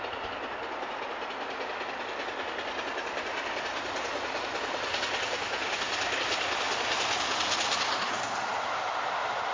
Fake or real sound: real